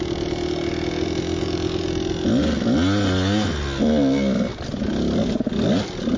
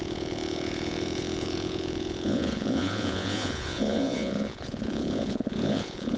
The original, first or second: first